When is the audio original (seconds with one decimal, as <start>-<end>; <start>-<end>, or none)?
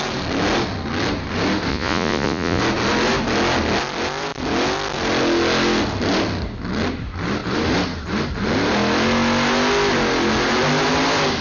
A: 0.0-1.7; 2.6-11.4